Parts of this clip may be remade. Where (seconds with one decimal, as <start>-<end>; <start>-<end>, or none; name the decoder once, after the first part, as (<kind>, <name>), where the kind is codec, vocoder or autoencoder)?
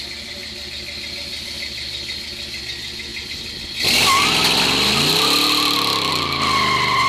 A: none